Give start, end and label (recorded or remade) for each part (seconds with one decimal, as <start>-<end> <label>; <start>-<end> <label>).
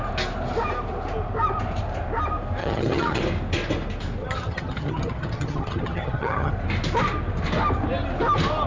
0.0-2.6 recorded; 2.6-3.2 remade; 3.2-4.2 recorded; 4.2-6.5 remade; 6.5-8.7 recorded